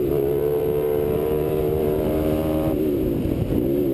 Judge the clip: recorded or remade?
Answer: remade